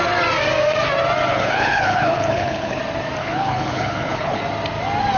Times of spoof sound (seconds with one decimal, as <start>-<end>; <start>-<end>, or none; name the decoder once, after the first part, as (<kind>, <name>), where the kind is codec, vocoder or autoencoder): 1.3-2.8 (codec, HILCodec); 3.2-4.4